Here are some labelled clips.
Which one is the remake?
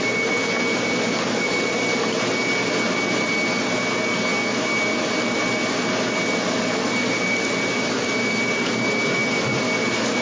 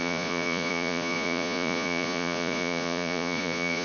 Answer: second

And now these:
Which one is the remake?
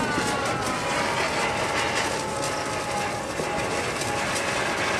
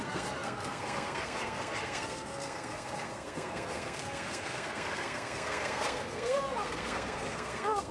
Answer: second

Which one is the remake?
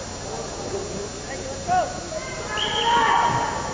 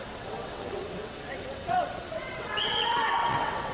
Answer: second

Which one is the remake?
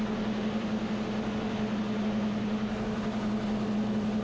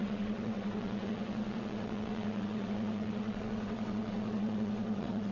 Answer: second